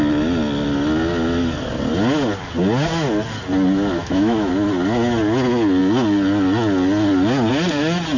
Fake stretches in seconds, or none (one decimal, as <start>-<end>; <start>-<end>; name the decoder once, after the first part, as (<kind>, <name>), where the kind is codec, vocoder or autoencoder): 4.0-4.5 (autoencoder, DAC-VAE)